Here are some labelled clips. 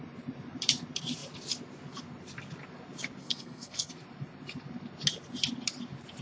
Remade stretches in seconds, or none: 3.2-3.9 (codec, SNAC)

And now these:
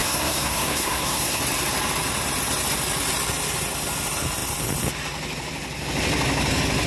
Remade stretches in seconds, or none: 0.0-1.4 (codec, SNAC)

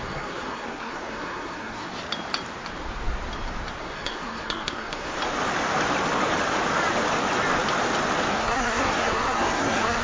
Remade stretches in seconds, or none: 0.0-1.9 (codec, SNAC); 3.8-5.1; 8.3-10.0

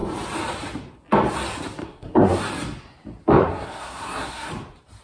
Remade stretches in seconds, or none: 1.8-2.4 (codec, SNAC); 3.4-4.5

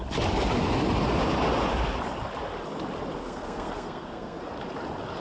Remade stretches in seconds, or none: 3.2-4.4 (codec, SNAC)

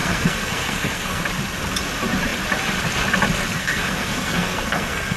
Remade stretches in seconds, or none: 0.0-1.2 (codec, SNAC); 3.6-5.2

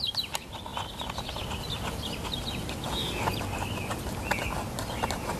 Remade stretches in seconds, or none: none

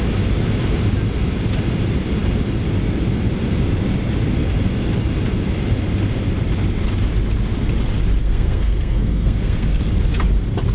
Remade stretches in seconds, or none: 8.2-9.9 (codec, SNAC)